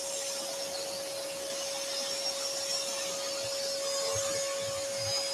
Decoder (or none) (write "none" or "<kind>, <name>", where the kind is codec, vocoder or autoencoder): none